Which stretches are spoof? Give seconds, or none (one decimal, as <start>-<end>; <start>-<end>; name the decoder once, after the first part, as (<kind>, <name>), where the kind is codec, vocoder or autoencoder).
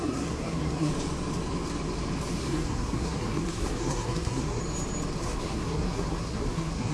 0.0-0.9 (codec, SNAC); 2.4-4.6; 5.2-6.9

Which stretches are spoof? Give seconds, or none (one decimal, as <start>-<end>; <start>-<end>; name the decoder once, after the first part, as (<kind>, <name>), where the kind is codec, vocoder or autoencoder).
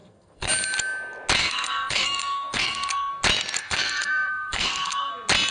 0.0-0.5 (codec, SNAC); 1.4-3.1; 3.6-5.1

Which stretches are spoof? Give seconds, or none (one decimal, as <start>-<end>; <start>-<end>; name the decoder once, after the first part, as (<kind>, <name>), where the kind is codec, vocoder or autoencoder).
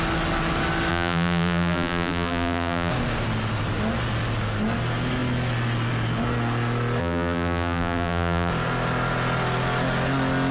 0.9-2.9 (vocoder, BigVGAN v2); 7.0-8.5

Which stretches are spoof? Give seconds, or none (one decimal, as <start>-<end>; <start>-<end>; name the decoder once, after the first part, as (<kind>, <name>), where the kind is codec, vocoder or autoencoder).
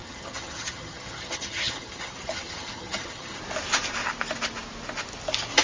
0.0-3.4 (vocoder, HiFi-GAN)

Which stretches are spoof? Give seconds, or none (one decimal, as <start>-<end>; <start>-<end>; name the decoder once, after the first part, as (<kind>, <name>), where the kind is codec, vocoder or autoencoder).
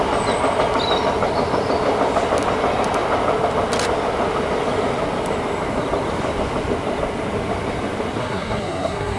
8.2-9.2 (codec, SNAC)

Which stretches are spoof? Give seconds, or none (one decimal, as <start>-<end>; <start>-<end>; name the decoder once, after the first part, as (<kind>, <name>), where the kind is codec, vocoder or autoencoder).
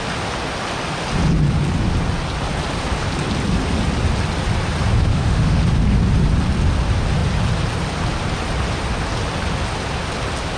5.1-5.6 (autoencoder, DAC-VAE)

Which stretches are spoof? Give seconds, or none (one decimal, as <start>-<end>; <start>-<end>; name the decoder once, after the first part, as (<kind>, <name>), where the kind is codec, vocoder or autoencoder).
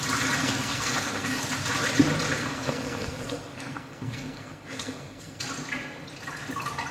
0.4-1.4 (codec, SNAC); 2.4-5.4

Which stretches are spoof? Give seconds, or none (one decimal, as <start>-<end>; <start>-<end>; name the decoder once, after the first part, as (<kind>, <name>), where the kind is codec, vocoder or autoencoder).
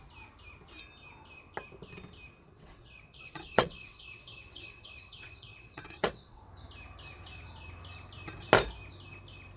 2.5-6.4 (vocoder, WaveNeXt)